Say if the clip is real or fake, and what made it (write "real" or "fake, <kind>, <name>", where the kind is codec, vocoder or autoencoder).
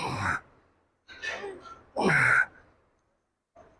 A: real